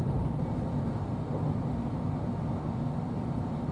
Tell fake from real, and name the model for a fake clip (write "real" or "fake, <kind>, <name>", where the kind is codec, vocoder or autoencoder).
real